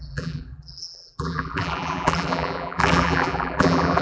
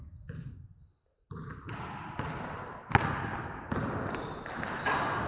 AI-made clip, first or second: first